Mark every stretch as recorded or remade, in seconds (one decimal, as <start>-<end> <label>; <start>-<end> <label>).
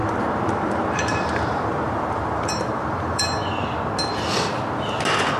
0.0-3.2 remade; 3.2-5.4 recorded